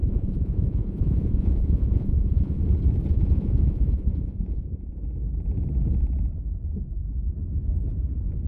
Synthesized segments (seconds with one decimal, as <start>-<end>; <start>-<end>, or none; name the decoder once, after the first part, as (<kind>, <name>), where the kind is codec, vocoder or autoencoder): 0.0-2.6 (vocoder, Vocos); 3.1-5.0

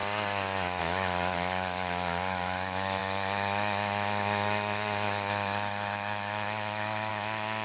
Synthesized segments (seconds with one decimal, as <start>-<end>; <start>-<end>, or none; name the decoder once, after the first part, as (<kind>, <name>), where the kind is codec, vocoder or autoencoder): 0.8-7.6 (autoencoder, DAC-VAE)

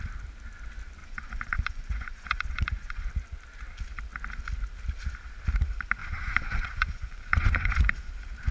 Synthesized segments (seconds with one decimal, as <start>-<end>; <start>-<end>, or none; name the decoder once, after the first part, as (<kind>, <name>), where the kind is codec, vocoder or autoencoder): 1.0-3.1 (vocoder, Vocos); 6.0-8.1

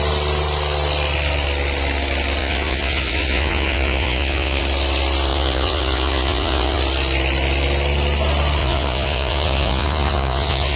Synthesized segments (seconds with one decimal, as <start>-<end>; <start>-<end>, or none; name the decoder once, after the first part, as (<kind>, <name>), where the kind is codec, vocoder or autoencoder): 2.4-4.6 (vocoder, Vocos); 5.3-6.8; 8.6-10.8

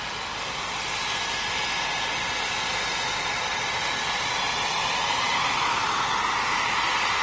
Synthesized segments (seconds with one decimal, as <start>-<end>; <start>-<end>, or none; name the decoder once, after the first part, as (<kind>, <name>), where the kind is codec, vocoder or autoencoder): 0.0-7.2 (vocoder, BigVGAN v2)

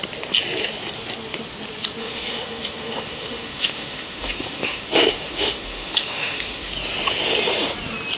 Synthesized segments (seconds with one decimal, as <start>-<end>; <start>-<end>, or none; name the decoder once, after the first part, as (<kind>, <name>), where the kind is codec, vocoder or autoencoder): 2.0-6.7 (autoencoder, DAC-VAE)

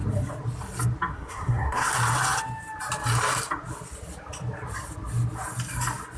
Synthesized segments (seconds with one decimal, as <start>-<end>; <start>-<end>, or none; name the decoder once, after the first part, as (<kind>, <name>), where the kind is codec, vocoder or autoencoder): 1.1-1.9 (codec, SNAC)